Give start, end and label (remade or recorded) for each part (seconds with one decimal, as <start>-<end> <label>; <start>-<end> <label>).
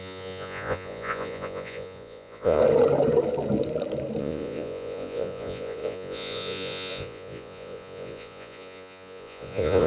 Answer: 0.0-2.6 remade; 2.6-4.2 recorded; 4.2-9.9 remade